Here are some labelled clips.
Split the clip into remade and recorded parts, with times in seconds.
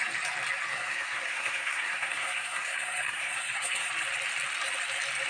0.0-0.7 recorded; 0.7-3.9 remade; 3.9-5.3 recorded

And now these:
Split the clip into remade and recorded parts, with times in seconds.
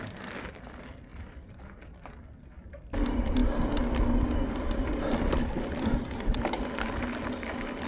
0.0-7.9 recorded